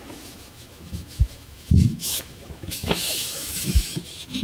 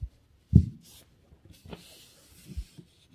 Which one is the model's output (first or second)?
first